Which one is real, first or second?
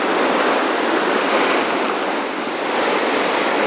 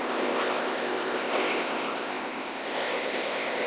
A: first